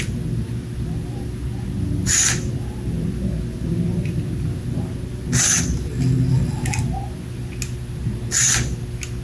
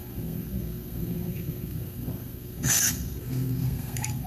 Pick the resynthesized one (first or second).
second